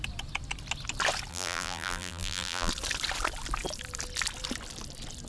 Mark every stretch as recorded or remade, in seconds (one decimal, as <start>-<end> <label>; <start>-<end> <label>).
0.0-1.3 recorded; 1.3-2.7 remade; 2.7-5.3 recorded